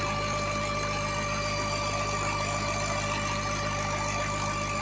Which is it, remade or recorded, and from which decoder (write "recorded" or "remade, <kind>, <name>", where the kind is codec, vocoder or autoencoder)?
recorded